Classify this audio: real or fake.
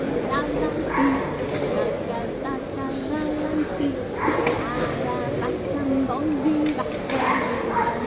real